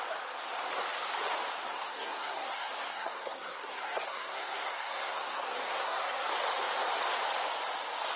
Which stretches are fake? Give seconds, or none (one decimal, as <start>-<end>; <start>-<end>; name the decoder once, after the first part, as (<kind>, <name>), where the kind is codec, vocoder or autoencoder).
1.7-6.3 (codec, SNAC)